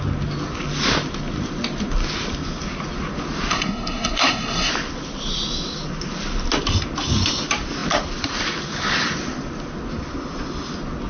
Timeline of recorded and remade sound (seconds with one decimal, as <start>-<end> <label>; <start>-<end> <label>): 0.0-3.5 recorded; 3.5-4.7 remade; 4.7-11.1 recorded